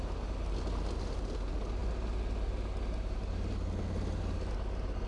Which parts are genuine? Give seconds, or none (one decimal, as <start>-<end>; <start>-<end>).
0.0-5.1